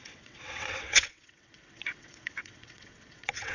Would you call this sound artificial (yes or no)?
yes